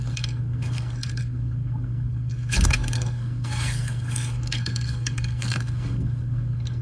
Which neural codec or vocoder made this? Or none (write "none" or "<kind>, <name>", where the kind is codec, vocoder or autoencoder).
codec, SNAC